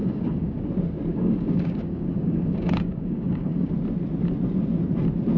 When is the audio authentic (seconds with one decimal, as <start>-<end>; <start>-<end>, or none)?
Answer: 0.6-1.1; 3.7-5.4